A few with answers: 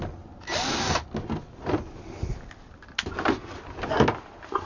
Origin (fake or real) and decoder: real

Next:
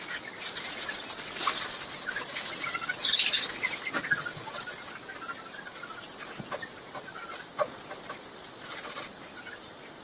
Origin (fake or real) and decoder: real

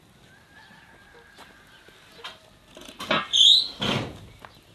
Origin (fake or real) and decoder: real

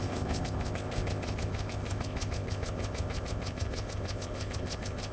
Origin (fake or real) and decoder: fake, codec, ZipCodec